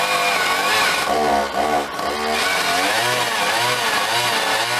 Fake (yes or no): no